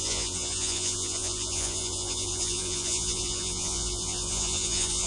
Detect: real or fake fake